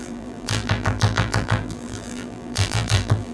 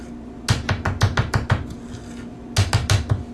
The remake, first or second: first